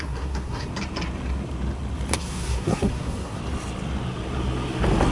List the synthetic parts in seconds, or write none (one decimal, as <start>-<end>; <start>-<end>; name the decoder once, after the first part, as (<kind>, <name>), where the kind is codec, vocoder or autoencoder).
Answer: 0.0-0.7 (codec, SNAC); 2.2-3.4